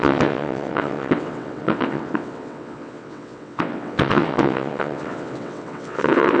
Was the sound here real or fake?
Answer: fake